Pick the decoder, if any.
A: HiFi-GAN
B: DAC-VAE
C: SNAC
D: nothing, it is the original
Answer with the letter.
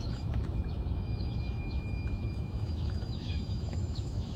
B